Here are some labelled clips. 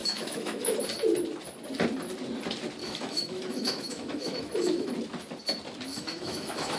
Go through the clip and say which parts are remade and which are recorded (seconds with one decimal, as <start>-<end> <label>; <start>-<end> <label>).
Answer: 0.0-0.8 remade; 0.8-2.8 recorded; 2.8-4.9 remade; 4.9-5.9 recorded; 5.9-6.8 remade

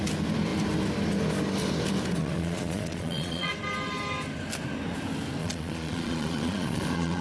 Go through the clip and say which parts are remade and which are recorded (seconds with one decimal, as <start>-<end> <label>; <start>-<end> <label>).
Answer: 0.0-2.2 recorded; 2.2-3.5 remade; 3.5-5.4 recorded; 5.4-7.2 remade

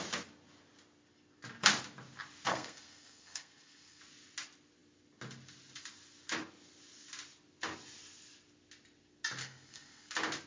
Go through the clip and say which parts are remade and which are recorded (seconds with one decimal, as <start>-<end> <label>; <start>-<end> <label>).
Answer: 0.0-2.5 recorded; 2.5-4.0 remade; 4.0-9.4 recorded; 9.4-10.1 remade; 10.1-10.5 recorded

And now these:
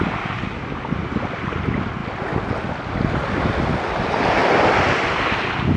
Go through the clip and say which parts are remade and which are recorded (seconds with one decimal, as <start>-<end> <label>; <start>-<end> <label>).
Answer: 0.0-5.8 recorded

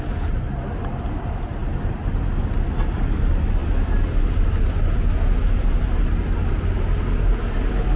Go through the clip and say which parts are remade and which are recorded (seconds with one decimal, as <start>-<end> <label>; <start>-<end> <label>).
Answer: 0.0-8.0 recorded

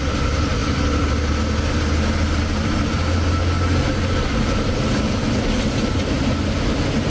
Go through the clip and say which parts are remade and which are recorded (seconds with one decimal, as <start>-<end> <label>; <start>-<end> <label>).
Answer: 0.0-7.1 recorded